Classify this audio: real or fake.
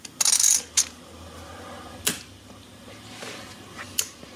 real